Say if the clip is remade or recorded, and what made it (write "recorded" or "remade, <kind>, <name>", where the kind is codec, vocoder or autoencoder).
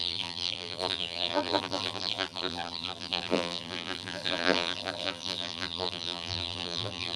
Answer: remade, vocoder, BigVGAN v2